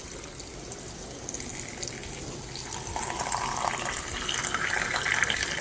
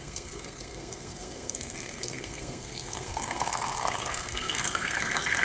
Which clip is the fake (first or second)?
second